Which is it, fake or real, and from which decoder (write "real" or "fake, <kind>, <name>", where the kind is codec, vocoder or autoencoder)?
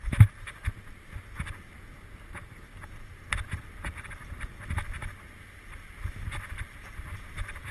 real